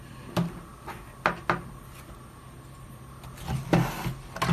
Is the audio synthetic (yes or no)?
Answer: no